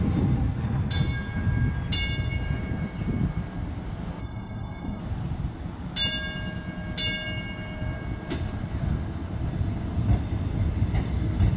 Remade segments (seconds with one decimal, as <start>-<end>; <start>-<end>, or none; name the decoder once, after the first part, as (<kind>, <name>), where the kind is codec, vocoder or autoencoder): 4.2-5.0 (codec, SNAC)